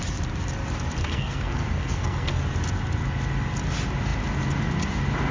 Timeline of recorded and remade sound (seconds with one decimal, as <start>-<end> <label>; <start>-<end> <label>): 0.0-1.0 recorded; 1.0-2.4 remade; 2.4-5.3 recorded